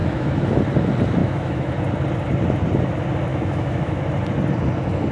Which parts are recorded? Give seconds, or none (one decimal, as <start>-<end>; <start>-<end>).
0.6-1.2; 1.7-3.3; 4.0-5.1